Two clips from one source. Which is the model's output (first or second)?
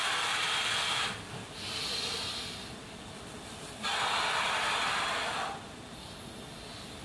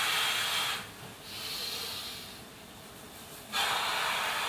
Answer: first